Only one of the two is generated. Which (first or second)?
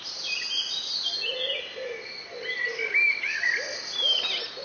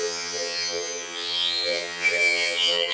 second